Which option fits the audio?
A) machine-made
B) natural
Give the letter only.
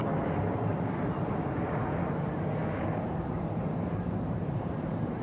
A